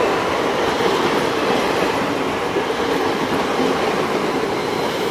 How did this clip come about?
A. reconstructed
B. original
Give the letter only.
B